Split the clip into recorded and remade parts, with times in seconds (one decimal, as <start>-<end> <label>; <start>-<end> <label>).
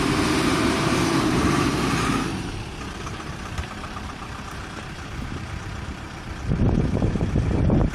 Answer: 0.0-0.5 recorded; 0.5-2.5 remade; 2.5-3.1 recorded; 3.1-7.9 remade